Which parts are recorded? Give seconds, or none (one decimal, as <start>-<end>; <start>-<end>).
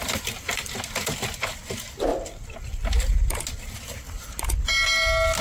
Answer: 0.0-5.4